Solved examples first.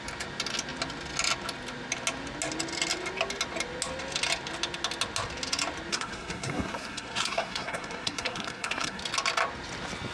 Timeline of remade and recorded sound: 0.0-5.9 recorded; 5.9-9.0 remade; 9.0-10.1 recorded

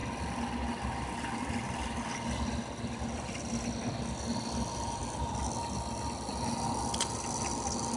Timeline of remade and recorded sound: 0.0-8.0 recorded

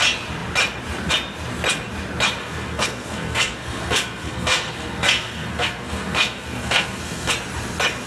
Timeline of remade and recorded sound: 0.0-2.4 recorded; 2.4-7.3 remade; 7.3-8.1 recorded

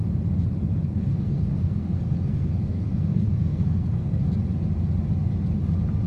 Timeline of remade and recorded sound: 0.0-0.6 recorded; 0.6-4.3 remade; 4.3-6.1 recorded